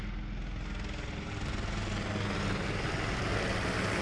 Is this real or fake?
real